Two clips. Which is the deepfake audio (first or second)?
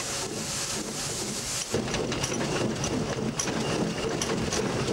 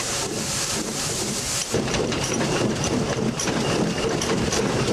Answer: second